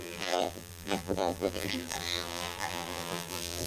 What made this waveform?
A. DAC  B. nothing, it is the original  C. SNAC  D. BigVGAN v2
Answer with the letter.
D